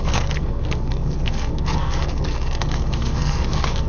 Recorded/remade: remade